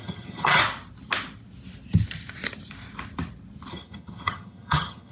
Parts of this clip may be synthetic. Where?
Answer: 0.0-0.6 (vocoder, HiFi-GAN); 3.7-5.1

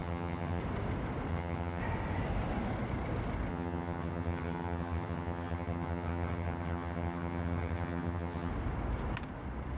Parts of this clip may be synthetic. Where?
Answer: 0.0-0.6 (vocoder, HiFi-GAN); 1.3-1.8; 3.5-8.5